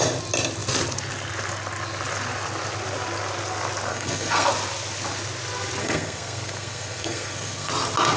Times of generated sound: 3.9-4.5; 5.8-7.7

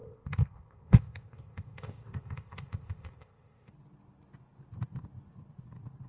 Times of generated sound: 0.0-3.7

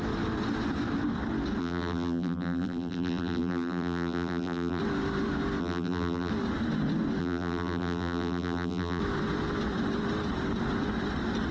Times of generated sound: 1.6-4.8; 5.6-6.3; 7.2-9.0

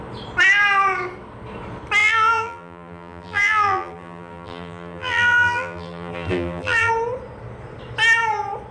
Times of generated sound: 2.0-6.9